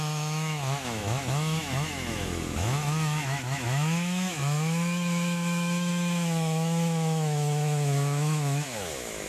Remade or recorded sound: remade